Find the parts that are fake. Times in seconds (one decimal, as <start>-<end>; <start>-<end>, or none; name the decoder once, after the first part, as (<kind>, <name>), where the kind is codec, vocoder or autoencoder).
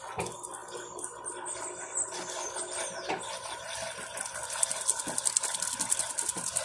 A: none